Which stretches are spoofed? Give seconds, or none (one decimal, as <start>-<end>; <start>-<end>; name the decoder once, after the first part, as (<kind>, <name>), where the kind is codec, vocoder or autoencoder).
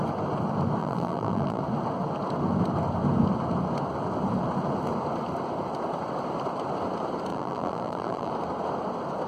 0.8-1.6 (vocoder, BigVGAN v2); 7.3-8.3